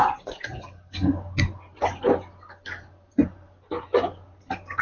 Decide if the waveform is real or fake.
real